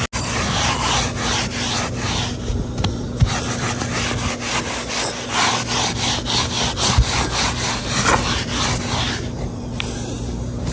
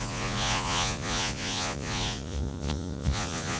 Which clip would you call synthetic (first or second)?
second